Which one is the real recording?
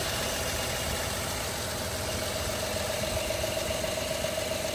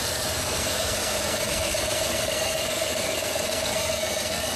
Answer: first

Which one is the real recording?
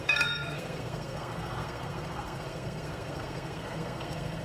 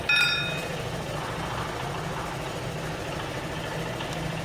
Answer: second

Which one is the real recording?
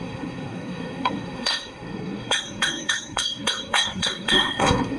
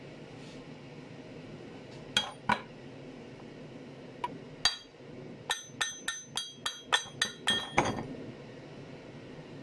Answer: second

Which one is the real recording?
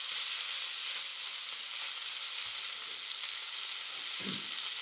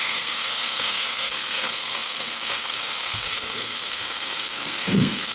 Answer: first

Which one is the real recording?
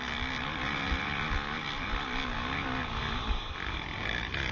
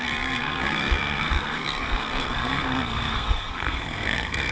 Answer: first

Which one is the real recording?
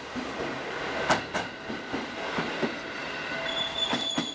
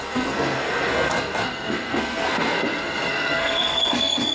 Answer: first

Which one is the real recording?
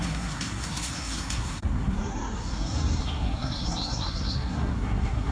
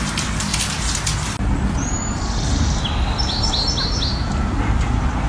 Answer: second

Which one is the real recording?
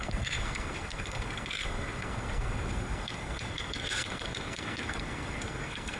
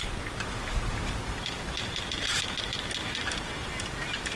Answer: second